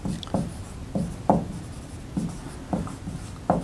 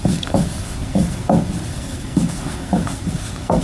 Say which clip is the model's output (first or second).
second